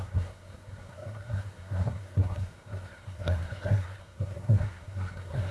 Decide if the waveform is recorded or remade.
remade